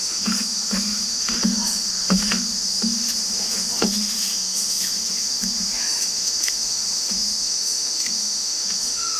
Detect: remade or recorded remade